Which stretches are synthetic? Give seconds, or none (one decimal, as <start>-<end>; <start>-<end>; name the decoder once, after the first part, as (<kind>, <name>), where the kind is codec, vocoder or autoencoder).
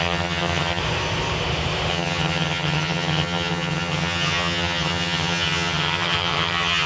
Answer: 0.0-0.8 (vocoder, HiFi-GAN); 1.9-6.9